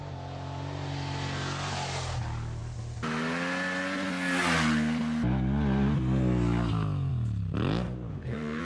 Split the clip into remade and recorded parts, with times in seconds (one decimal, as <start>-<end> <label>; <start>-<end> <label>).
0.0-8.1 recorded; 8.1-8.6 remade